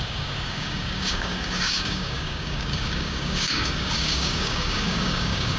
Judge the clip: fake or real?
fake